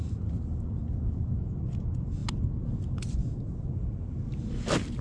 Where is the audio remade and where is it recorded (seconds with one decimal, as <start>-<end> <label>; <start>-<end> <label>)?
0.0-5.0 recorded